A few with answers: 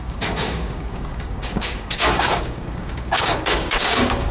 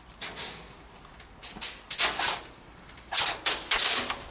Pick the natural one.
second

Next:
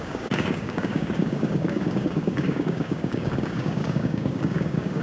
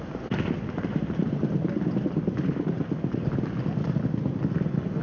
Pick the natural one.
second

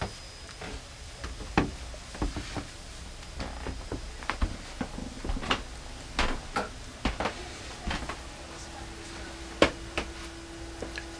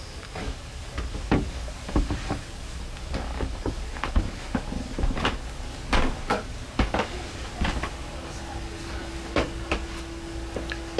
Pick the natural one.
first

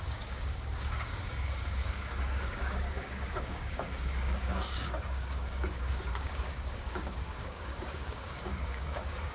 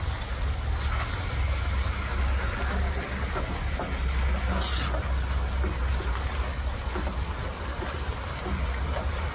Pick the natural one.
second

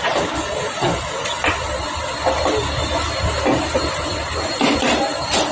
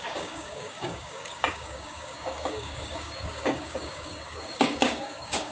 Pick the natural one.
first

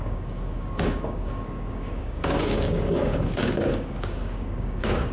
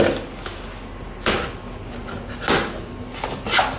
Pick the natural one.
second